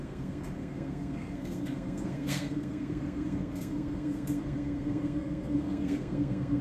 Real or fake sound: fake